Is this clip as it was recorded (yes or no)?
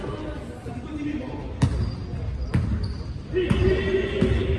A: yes